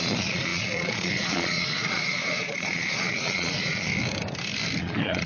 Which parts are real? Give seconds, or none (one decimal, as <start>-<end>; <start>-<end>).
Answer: 3.9-4.8